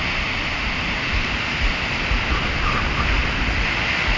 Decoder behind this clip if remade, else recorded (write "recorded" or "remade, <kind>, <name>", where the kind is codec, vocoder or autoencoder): recorded